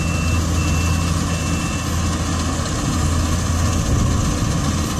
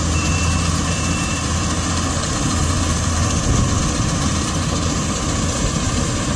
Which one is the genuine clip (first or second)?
first